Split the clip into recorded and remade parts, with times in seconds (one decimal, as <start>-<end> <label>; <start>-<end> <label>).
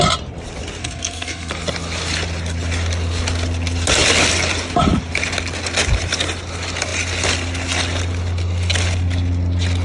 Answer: 0.0-0.8 recorded; 0.8-1.5 remade; 1.5-9.8 recorded